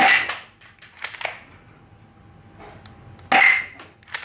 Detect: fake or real real